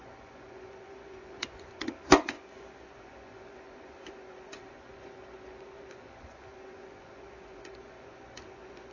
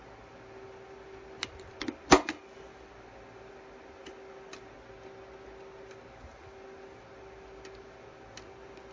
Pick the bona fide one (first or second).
second